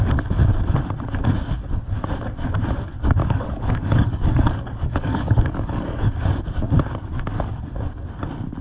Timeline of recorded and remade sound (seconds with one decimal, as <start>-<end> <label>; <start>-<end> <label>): 0.0-3.2 recorded; 3.2-6.2 remade; 6.2-7.1 recorded; 7.1-7.6 remade; 7.6-8.6 recorded